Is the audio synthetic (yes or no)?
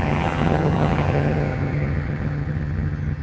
yes